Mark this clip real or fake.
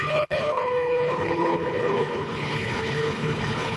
fake